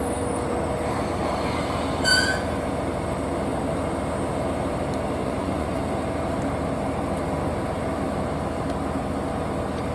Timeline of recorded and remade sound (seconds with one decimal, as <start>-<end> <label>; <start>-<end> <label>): 0.0-5.2 recorded; 5.2-5.8 remade; 5.8-9.9 recorded